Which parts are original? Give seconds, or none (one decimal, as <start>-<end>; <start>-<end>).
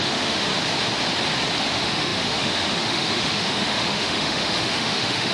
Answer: 0.5-1.6